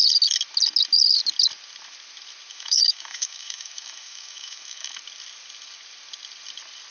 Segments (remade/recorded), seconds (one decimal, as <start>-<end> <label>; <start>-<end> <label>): 0.0-2.5 recorded; 2.5-5.0 remade; 5.0-6.9 recorded